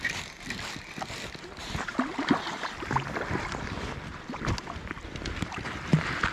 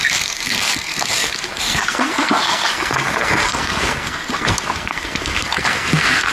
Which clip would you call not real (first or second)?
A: second